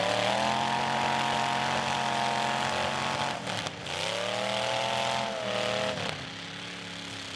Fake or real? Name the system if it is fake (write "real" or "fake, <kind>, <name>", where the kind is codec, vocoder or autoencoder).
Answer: real